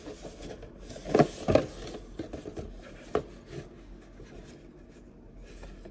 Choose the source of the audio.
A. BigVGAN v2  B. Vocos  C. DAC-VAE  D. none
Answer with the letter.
D